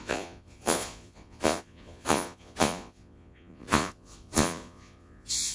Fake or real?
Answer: fake